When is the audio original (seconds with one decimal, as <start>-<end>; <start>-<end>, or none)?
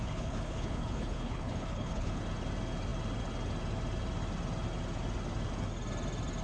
2.2-6.4